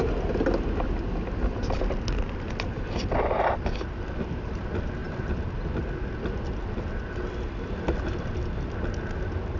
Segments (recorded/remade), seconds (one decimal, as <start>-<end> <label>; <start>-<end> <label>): 0.0-9.6 recorded